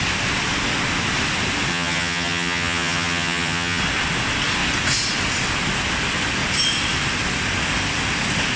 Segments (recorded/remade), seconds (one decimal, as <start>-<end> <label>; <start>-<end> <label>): 0.0-1.7 recorded; 1.7-3.8 remade; 3.8-8.6 recorded